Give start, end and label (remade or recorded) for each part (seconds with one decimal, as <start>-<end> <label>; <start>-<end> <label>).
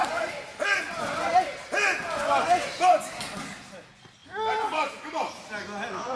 0.0-0.8 remade; 0.8-4.2 recorded; 4.2-4.9 remade; 4.9-6.2 recorded